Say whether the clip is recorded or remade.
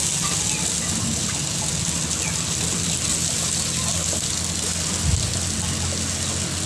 recorded